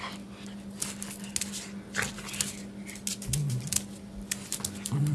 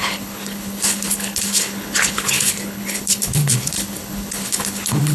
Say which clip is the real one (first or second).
first